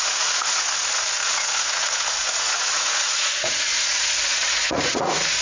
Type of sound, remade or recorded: remade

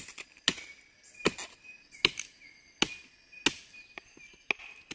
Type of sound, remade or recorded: recorded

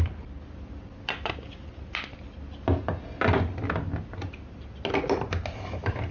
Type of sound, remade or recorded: recorded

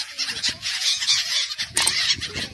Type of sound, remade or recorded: remade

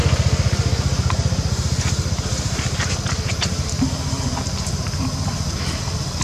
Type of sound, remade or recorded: recorded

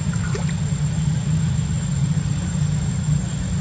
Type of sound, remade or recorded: recorded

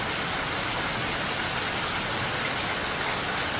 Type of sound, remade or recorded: recorded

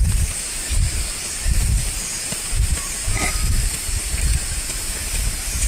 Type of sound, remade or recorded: recorded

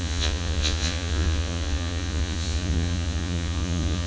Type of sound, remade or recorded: remade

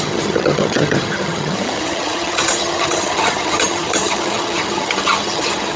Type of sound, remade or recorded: remade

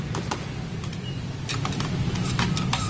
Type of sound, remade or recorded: recorded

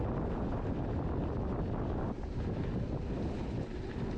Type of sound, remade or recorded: recorded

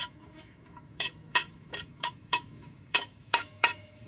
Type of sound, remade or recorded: remade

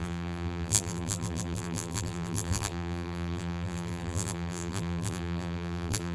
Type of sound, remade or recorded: remade